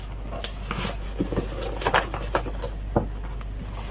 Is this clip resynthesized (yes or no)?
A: no